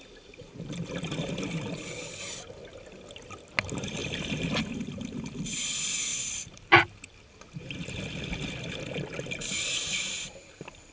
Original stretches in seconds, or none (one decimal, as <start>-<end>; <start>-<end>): 0.0-4.0; 4.6-6.1; 6.9-10.9